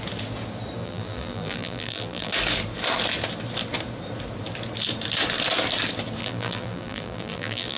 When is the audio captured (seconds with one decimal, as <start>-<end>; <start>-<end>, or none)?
0.0-0.8; 2.3-6.2

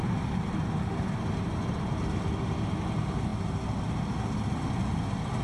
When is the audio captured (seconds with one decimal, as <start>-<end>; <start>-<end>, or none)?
0.0-5.4